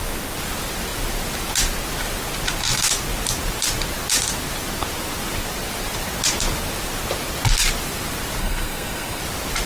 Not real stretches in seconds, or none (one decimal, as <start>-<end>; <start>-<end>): 8.4-9.2